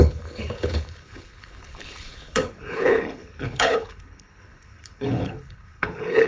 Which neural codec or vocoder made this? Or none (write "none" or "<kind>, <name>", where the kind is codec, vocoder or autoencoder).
codec, HILCodec